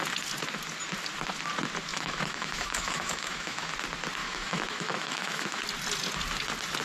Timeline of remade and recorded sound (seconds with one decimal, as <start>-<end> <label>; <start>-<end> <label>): 0.0-1.9 recorded; 1.9-3.7 remade; 3.7-4.2 recorded; 4.2-5.6 remade; 5.6-6.8 recorded